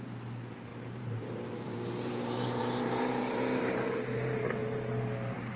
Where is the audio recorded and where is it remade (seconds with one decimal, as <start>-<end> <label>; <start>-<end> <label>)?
0.0-0.7 recorded; 0.7-4.1 remade; 4.1-5.6 recorded